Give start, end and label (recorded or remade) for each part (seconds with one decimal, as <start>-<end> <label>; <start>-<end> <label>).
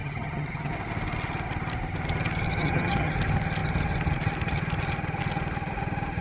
0.0-0.7 remade; 0.7-2.6 recorded; 2.6-3.1 remade; 3.1-6.2 recorded